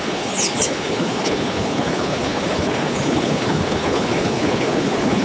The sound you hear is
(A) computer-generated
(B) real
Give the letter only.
A